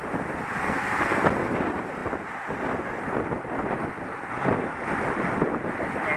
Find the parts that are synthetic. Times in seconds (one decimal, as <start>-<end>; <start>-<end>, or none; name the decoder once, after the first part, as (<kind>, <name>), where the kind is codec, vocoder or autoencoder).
0.6-1.2 (codec, SNAC)